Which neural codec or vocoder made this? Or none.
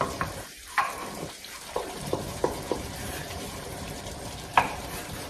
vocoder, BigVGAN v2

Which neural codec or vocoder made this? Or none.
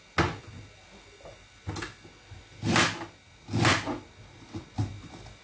none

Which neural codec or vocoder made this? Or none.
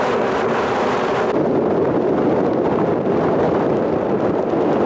none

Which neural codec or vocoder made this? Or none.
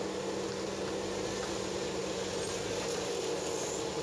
none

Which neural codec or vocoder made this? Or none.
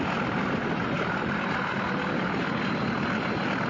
none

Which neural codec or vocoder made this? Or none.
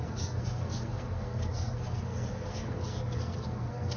codec, SNAC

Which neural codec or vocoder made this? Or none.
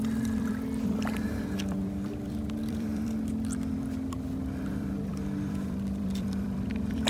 vocoder, BigVGAN v2